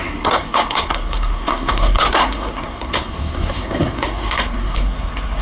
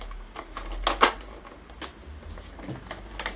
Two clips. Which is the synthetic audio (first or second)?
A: first